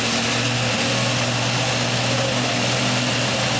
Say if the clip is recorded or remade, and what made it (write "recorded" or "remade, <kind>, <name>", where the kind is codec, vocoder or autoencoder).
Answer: recorded